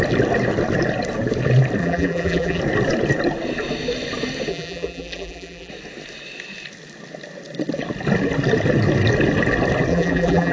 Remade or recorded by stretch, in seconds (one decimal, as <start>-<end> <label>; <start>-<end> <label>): 0.0-1.8 recorded; 1.8-2.6 remade; 2.6-4.5 recorded; 4.5-5.7 remade; 5.7-9.9 recorded; 9.9-10.5 remade